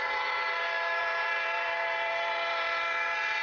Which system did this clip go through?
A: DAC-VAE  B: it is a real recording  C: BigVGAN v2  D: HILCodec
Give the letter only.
C